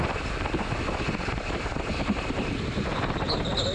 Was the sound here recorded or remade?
recorded